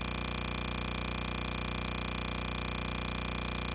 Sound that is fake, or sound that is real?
real